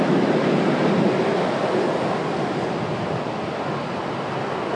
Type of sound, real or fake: real